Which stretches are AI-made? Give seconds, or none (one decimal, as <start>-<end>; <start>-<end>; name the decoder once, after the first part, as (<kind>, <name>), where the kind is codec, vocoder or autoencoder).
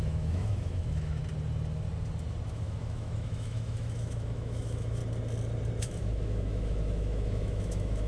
0.0-1.2 (autoencoder, DAC-VAE); 2.5-5.0; 5.8-8.1